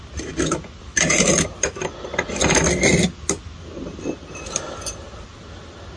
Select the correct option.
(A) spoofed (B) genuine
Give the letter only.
B